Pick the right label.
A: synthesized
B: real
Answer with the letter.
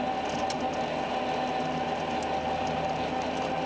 B